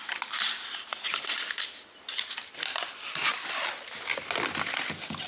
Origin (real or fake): real